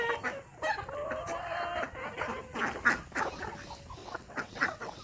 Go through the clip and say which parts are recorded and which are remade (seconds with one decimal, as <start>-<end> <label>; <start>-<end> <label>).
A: 0.0-4.0 recorded; 4.0-5.0 remade

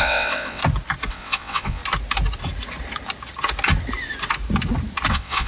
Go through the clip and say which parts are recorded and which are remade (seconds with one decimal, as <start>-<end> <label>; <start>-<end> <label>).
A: 0.0-0.6 remade; 0.6-1.1 recorded; 1.1-1.8 remade; 1.8-5.1 recorded; 5.1-5.5 remade

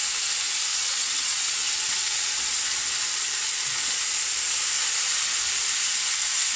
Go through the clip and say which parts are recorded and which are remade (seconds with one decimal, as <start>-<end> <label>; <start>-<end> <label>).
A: 0.0-0.7 recorded; 0.7-2.6 remade; 2.6-6.6 recorded